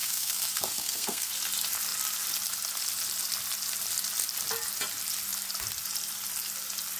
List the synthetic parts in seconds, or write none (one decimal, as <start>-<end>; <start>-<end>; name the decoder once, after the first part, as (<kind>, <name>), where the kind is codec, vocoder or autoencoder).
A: 0.0-1.3 (codec, SNAC)